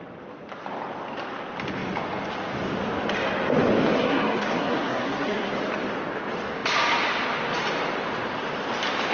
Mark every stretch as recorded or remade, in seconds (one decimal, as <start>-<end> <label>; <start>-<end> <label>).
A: 0.0-3.9 recorded; 3.9-5.5 remade; 5.5-9.1 recorded